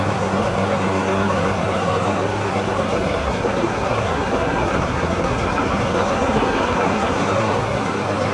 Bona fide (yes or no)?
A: no